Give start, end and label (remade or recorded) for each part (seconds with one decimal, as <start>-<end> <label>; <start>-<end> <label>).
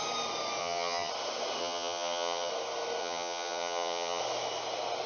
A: 0.0-0.6 recorded; 0.6-1.1 remade; 1.1-1.6 recorded; 1.6-2.5 remade; 2.5-3.0 recorded; 3.0-4.2 remade; 4.2-5.1 recorded